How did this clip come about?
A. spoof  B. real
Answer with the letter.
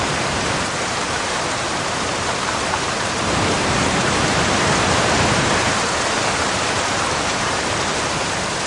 A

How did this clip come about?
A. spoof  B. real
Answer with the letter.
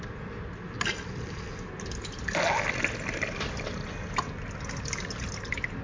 B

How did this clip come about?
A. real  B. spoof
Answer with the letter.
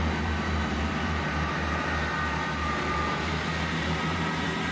B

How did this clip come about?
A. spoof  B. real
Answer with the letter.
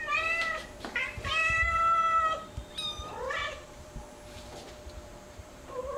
A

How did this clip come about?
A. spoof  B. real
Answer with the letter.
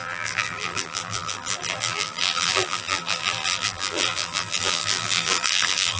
A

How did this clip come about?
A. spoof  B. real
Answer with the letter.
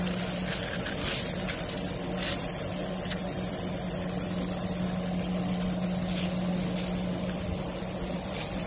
B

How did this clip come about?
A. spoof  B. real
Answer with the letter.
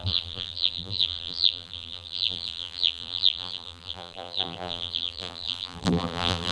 A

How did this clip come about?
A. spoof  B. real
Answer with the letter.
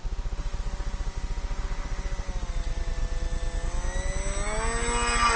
B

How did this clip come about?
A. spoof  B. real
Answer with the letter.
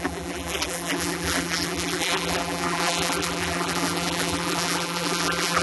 A